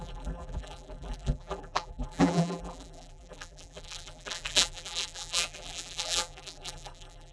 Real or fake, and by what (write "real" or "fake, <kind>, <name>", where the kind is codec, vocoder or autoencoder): fake, vocoder, BigVGAN v2